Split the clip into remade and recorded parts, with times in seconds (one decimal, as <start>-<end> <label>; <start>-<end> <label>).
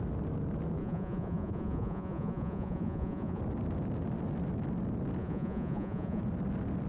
0.0-0.8 recorded; 0.8-3.4 remade; 3.4-5.2 recorded; 5.2-6.2 remade; 6.2-6.9 recorded